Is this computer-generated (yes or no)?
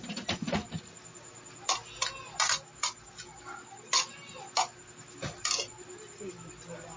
no